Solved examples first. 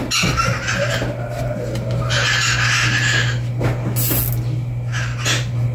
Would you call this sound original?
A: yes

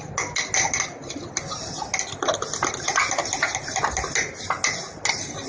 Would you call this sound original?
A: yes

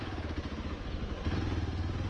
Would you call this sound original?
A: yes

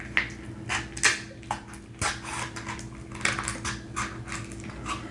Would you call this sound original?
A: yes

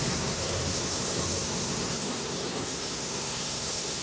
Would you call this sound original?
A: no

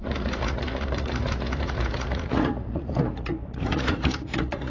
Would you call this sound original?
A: no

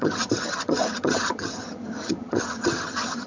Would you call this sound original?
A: no